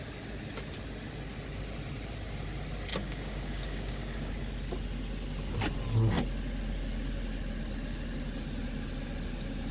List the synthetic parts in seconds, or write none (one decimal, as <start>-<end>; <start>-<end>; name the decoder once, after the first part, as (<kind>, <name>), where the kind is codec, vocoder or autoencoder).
2.9-4.3 (codec, DAC)